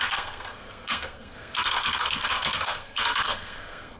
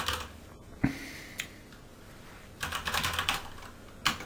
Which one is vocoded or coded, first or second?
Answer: first